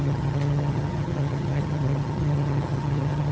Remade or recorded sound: remade